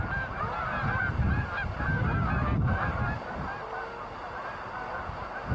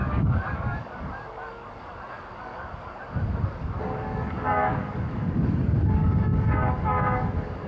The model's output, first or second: second